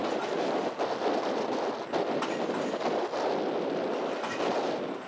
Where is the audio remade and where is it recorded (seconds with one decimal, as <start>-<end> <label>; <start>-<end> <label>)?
0.0-5.1 recorded